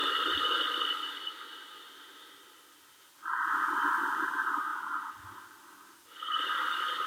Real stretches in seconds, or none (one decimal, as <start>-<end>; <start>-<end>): 0.0-7.1